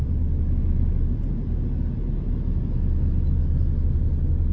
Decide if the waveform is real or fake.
real